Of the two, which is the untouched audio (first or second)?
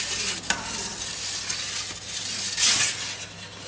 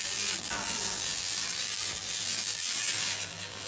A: first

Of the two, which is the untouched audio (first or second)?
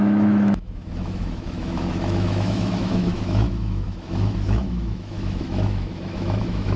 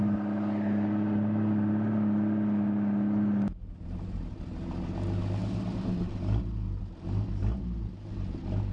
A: second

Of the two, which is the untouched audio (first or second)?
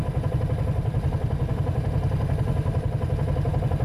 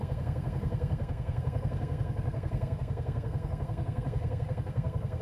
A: first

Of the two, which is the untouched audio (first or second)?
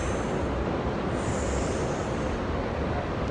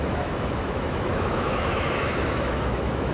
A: first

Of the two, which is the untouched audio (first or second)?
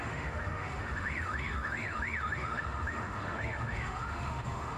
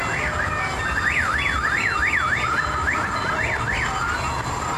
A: second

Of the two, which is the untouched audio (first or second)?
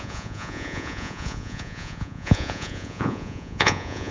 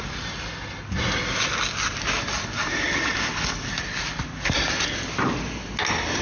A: second